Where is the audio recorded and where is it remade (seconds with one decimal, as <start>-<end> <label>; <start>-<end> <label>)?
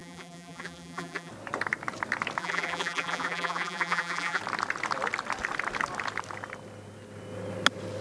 0.0-1.3 remade; 1.3-2.4 recorded; 2.4-4.4 remade; 4.4-8.0 recorded